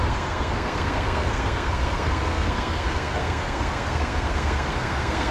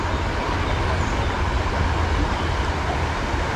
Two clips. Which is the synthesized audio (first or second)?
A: first